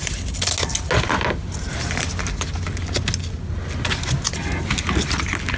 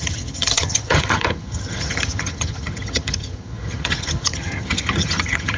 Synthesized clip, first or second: second